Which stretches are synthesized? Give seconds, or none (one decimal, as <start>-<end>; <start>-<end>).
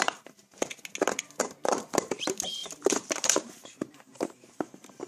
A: 0.0-0.4; 1.2-5.1